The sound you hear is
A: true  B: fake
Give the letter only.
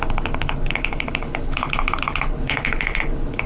B